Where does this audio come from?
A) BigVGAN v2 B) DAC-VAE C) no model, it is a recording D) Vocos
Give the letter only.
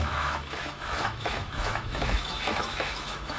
B